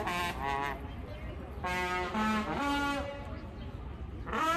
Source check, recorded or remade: recorded